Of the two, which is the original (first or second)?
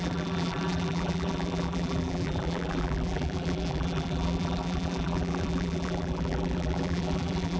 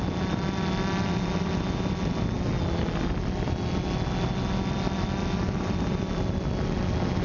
second